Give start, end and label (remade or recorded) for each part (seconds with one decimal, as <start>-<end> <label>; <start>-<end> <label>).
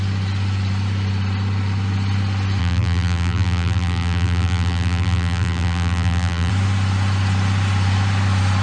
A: 0.0-2.6 recorded; 2.6-6.5 remade; 6.5-8.6 recorded